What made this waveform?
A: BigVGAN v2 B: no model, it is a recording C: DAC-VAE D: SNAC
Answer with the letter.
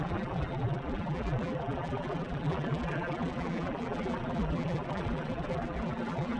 A